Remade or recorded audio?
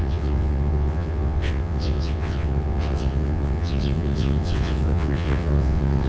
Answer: remade